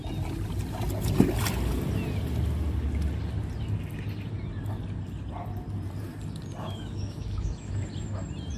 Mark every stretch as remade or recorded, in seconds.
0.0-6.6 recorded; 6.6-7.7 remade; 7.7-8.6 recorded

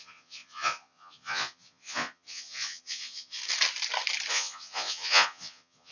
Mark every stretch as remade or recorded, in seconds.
0.0-3.4 remade; 3.4-4.3 recorded; 4.3-5.9 remade

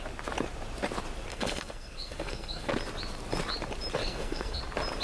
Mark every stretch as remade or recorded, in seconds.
0.0-1.3 recorded; 1.3-2.7 remade; 2.7-4.0 recorded; 4.0-4.6 remade; 4.6-5.0 recorded

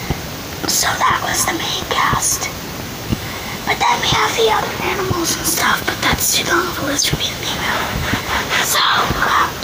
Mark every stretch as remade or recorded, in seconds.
0.0-3.1 recorded; 3.1-4.6 remade; 4.6-5.6 recorded; 5.6-8.4 remade; 8.4-9.6 recorded